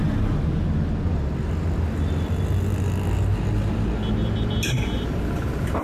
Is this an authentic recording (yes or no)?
yes